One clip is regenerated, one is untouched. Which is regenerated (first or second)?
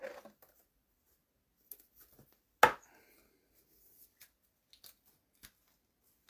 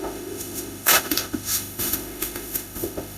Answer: second